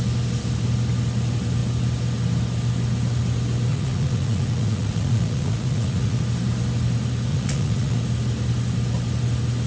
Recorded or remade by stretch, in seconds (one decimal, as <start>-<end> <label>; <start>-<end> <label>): 0.0-3.7 recorded; 3.7-6.2 remade; 6.2-7.3 recorded; 7.3-8.0 remade; 8.0-9.7 recorded